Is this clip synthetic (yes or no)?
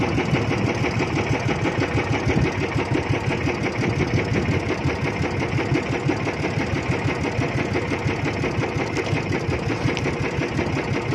no